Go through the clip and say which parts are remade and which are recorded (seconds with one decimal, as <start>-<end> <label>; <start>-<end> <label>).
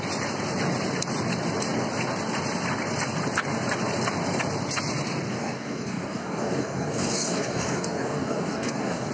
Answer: 0.0-5.3 recorded; 5.3-9.1 remade